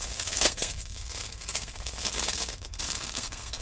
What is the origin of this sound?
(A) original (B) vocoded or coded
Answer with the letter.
B